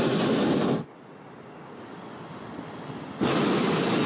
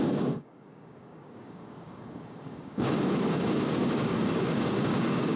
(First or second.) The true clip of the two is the first